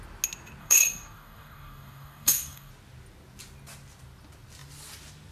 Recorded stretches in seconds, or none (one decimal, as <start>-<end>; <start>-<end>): 0.0-0.6; 2.7-5.3